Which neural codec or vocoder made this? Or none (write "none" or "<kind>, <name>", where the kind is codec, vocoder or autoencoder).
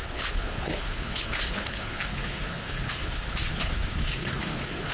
codec, HILCodec